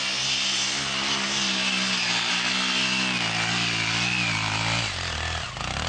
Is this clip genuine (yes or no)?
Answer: yes